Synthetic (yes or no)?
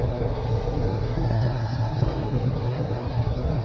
yes